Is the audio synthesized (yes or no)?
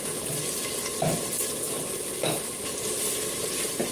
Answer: no